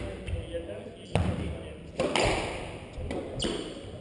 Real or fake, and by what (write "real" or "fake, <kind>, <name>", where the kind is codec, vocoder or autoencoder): real